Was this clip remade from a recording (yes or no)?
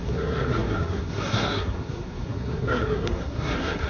yes